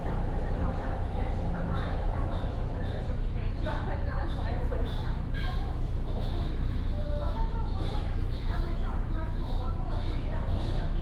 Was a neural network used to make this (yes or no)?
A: yes